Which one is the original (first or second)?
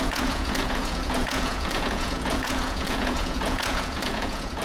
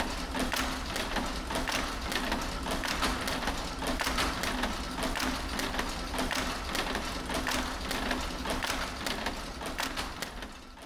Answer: second